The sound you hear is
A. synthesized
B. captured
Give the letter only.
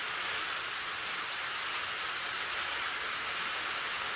B